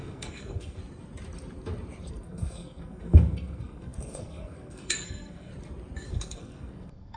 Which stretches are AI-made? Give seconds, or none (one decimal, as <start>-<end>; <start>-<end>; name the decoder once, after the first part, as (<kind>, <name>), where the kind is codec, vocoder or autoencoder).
0.0-0.8 (codec, SNAC); 2.1-5.5; 6.1-7.2